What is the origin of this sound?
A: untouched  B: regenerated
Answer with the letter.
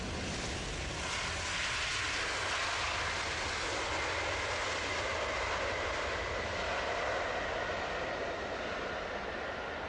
A